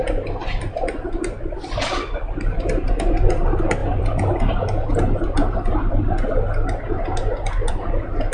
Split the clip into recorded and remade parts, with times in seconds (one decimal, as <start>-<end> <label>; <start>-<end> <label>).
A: 0.0-0.4 recorded; 0.4-2.6 remade; 2.6-3.8 recorded; 3.8-4.9 remade; 4.9-7.2 recorded; 7.2-7.7 remade; 7.7-8.3 recorded